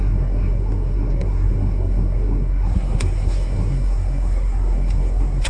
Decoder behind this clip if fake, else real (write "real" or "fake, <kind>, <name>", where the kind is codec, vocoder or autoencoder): fake, codec, SNAC